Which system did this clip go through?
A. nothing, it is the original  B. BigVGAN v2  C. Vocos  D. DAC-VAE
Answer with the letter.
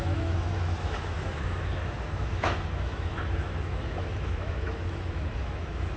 D